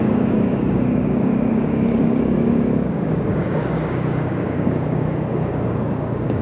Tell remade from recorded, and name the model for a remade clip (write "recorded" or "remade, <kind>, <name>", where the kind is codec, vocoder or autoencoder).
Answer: remade, codec, DAC